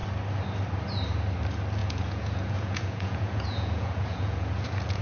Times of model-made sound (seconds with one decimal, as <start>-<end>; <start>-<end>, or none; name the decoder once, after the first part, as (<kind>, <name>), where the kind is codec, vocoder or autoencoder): 1.8-5.0 (vocoder, Vocos)